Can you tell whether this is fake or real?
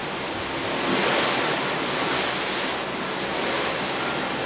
real